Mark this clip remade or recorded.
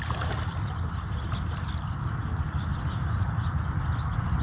recorded